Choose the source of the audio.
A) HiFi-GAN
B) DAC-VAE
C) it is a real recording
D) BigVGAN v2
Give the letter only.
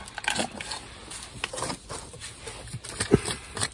C